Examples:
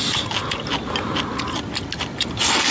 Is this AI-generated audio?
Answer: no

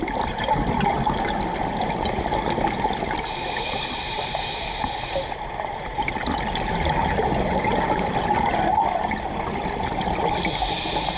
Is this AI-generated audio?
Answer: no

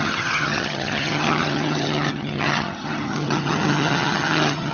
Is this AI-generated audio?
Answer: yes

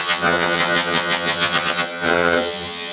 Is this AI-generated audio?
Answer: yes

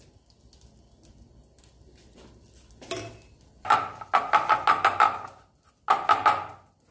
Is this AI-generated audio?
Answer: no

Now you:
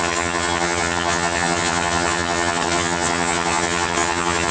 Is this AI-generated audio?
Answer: yes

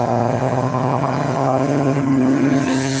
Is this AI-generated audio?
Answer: yes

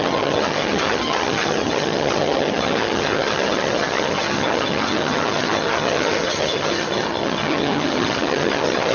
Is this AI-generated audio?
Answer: yes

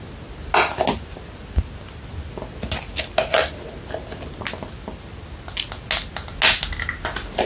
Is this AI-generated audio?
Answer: no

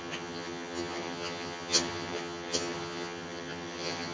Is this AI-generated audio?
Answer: yes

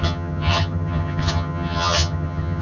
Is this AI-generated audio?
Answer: yes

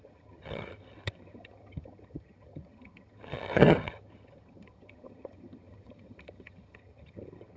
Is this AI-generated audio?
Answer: yes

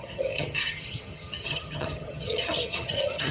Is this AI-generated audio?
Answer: yes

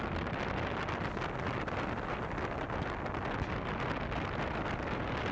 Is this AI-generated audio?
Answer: no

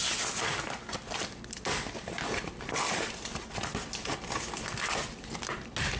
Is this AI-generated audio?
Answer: no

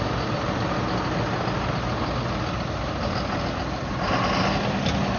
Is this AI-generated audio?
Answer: no